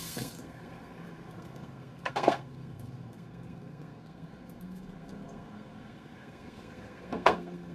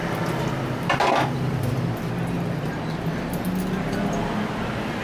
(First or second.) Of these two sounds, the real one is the second